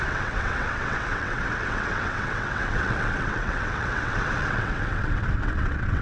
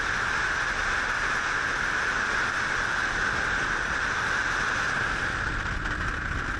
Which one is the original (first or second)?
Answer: second